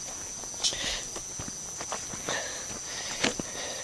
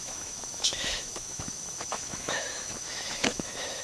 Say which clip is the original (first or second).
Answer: first